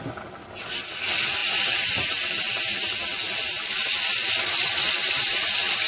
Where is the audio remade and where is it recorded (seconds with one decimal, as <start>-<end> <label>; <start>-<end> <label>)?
0.0-5.9 recorded